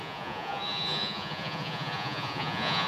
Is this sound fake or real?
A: fake